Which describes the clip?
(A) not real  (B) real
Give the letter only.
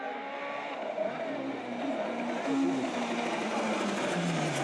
B